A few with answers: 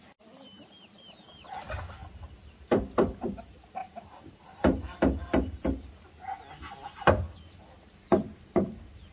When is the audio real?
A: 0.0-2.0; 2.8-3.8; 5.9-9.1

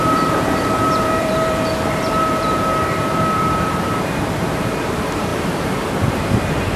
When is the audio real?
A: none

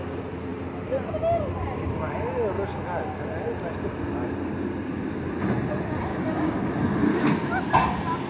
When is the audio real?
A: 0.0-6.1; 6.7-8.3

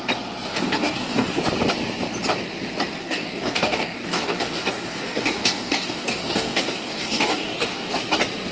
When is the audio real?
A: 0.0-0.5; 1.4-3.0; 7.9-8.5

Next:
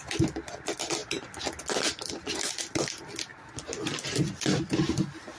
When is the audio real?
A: 0.0-5.4

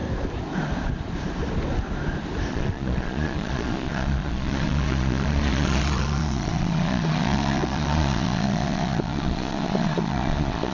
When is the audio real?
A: 0.0-2.5